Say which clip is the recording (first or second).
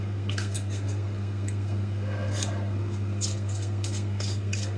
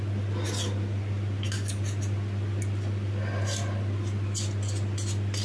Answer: second